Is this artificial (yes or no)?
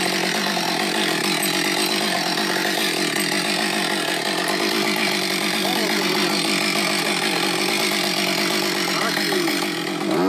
no